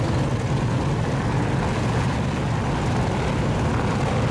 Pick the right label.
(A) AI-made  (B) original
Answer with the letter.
B